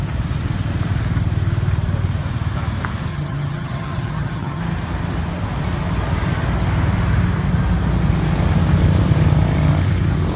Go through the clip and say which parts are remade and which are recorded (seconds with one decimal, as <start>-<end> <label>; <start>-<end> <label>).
0.0-3.1 recorded; 3.1-4.6 remade; 4.6-10.4 recorded

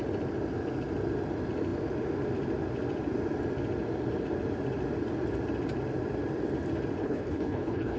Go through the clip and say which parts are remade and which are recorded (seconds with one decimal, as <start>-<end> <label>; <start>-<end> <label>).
0.0-7.0 recorded; 7.0-8.0 remade